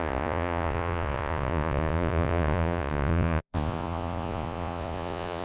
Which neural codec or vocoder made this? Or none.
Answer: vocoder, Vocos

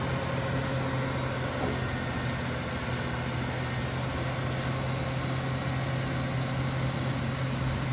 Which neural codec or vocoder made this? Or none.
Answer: none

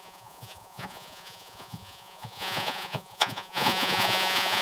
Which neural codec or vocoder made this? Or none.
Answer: vocoder, Vocos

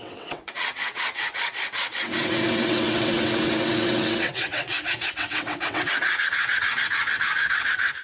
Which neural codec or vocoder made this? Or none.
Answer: vocoder, WaveNeXt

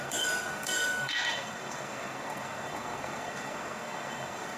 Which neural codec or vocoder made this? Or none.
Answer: codec, SNAC